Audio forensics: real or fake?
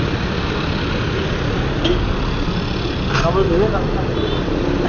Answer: real